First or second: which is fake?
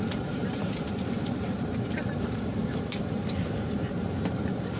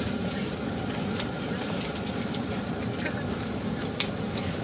first